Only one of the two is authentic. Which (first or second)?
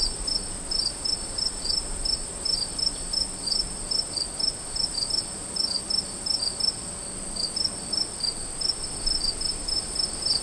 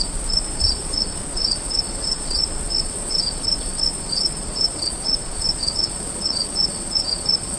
first